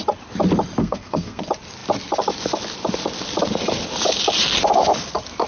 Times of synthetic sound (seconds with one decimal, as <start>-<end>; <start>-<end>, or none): 0.8-1.4